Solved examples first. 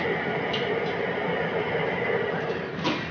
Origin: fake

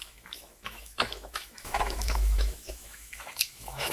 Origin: fake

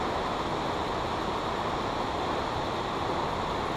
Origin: real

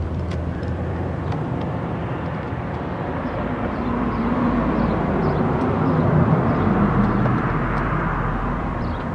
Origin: fake